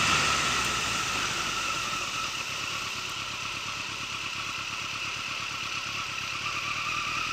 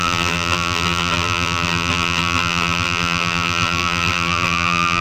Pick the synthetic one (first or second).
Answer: second